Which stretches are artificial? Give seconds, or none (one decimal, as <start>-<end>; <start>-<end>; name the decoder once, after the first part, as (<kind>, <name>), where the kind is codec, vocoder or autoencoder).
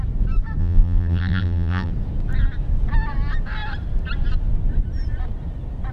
0.6-1.9 (vocoder, BigVGAN v2)